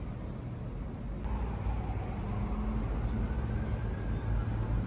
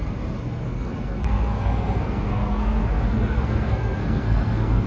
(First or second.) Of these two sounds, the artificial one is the second